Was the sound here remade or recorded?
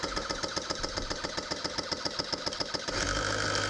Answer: recorded